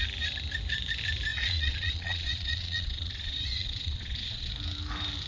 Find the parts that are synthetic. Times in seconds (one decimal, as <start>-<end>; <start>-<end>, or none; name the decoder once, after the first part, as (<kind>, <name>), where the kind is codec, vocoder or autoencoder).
1.3-4.5 (vocoder, Vocos)